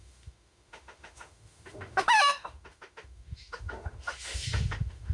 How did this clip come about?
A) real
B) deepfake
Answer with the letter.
B